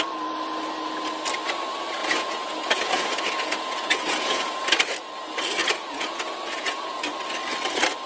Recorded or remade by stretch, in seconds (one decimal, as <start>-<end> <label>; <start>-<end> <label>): 0.0-2.0 recorded; 2.0-4.8 remade; 4.8-5.6 recorded; 5.6-7.0 remade; 7.0-8.1 recorded

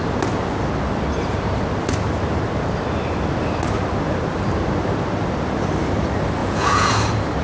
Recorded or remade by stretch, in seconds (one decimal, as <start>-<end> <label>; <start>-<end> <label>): 0.0-6.4 recorded; 6.4-6.9 remade; 6.9-7.4 recorded

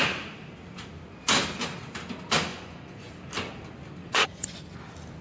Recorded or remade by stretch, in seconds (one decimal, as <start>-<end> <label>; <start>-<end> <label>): 0.0-2.5 recorded; 2.5-3.1 remade; 3.1-4.0 recorded; 4.0-4.6 remade; 4.6-5.2 recorded

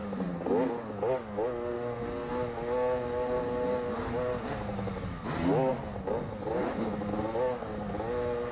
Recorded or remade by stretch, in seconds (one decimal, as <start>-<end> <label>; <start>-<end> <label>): 0.0-8.5 recorded

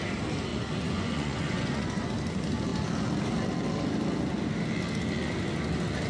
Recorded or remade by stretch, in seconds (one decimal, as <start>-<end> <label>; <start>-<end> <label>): 0.0-0.5 recorded; 0.5-2.0 remade; 2.0-6.1 recorded